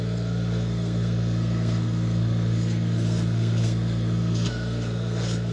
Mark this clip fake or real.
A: fake